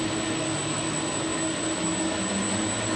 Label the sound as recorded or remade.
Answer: recorded